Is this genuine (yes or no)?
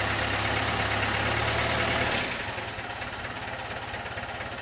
yes